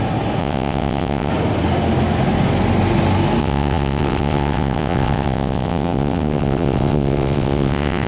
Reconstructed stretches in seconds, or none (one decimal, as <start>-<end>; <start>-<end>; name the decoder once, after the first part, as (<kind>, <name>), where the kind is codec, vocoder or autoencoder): 0.4-1.3 (vocoder, WaveNeXt); 3.4-8.1